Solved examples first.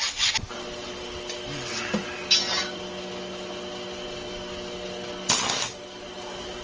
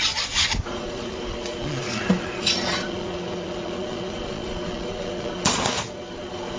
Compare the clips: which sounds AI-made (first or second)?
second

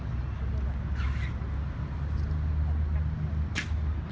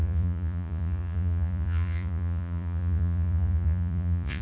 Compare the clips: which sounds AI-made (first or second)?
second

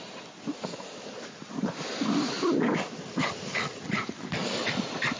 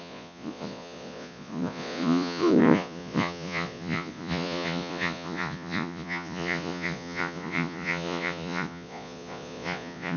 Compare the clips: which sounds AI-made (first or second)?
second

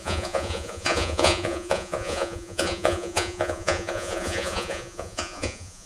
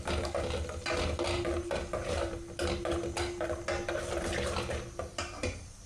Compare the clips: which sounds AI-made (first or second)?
first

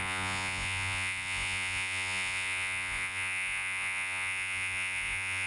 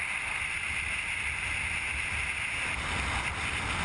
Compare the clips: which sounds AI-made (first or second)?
first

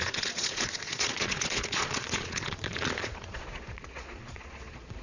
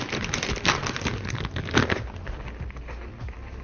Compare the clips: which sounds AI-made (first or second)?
first